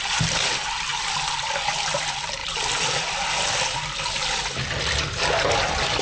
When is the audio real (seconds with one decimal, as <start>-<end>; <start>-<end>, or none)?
0.0-6.0